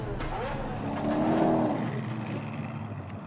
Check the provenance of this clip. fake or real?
real